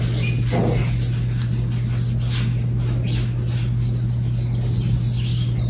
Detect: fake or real real